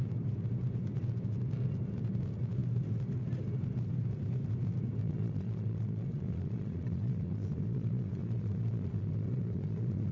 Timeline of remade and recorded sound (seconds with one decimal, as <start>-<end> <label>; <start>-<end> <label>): 0.0-5.0 recorded; 5.0-10.1 remade

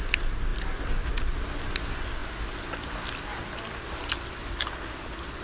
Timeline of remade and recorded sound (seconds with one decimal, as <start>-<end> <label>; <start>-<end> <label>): 0.0-5.4 recorded

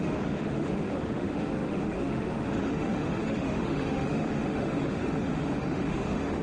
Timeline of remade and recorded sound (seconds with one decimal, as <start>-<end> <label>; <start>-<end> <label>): 0.0-6.4 remade

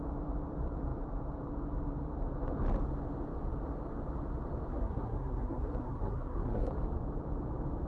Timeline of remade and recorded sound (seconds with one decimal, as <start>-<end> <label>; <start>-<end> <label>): 0.0-4.7 recorded; 4.7-6.7 remade; 6.7-7.9 recorded